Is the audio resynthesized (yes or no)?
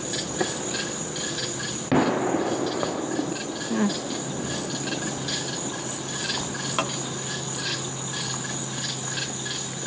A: no